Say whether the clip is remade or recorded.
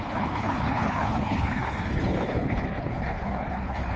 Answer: remade